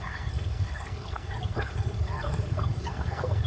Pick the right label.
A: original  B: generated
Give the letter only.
B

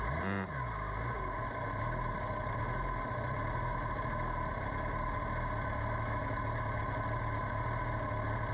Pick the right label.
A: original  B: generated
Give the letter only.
A